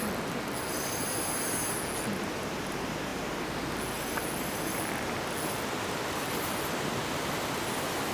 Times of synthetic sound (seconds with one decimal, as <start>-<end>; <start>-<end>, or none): none